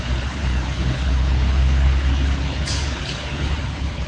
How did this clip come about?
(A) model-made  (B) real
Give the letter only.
A